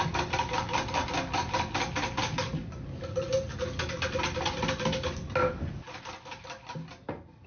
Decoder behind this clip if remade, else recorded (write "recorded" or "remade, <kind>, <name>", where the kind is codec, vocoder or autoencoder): recorded